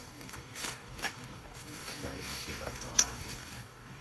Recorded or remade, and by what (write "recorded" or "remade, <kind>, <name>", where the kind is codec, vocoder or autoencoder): remade, codec, DAC